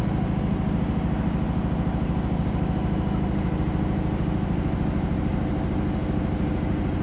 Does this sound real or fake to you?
real